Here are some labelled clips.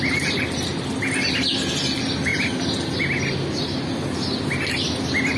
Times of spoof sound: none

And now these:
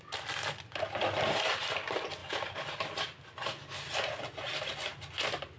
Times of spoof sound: none

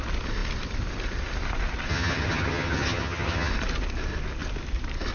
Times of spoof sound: 1.9-3.5 (vocoder, HiFi-GAN)

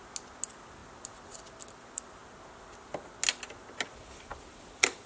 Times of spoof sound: none

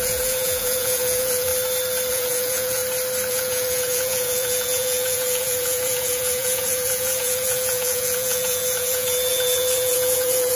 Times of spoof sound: 0.0-1.5 (vocoder, Vocos); 2.1-2.8; 3.3-10.6

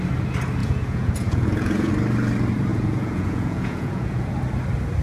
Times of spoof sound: 0.6-1.9 (vocoder, Vocos); 2.7-4.3